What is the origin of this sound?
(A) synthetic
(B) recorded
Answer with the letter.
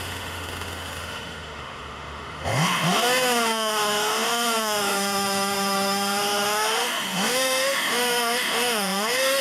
A